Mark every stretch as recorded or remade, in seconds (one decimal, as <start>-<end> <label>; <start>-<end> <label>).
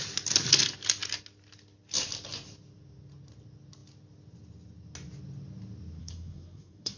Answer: 0.0-6.0 recorded; 6.0-7.0 remade